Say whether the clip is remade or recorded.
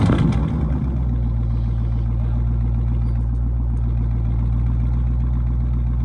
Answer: recorded